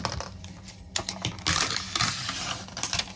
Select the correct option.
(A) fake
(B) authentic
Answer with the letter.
B